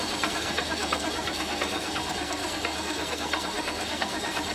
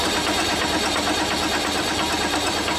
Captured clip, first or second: second